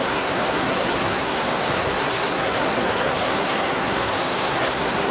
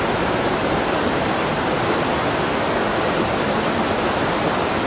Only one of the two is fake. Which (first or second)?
first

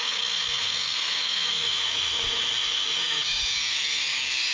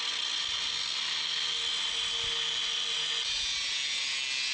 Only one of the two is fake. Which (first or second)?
first